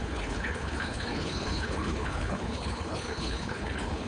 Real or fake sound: fake